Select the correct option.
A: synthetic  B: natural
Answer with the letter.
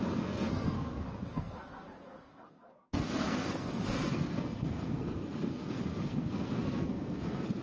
A